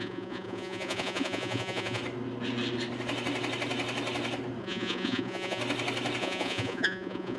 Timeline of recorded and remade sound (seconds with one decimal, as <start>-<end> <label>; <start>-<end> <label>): 0.0-2.0 remade; 2.0-4.6 recorded; 4.6-5.6 remade; 5.6-6.2 recorded; 6.2-7.4 remade